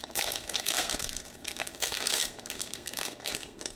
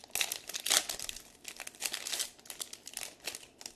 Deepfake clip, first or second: first